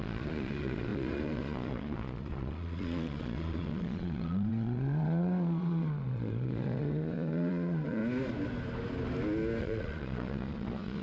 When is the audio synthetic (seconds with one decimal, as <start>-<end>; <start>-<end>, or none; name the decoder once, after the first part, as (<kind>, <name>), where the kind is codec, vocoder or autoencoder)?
0.0-8.0 (vocoder, Vocos); 9.6-11.0